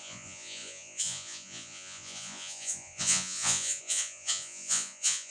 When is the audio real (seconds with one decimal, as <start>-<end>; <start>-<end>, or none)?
none